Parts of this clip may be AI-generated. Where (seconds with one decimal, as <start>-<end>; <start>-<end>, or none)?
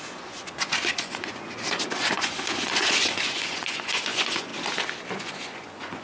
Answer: 0.0-4.5; 5.1-6.0